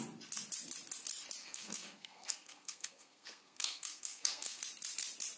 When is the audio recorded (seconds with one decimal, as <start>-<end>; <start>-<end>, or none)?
0.0-1.4; 4.6-5.4